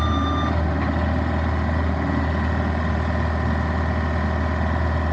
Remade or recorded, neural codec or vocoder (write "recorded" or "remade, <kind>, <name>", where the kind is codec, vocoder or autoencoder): recorded